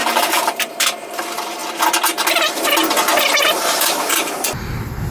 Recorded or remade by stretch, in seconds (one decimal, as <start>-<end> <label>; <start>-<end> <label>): 0.0-1.6 remade; 1.6-3.4 recorded; 3.4-5.1 remade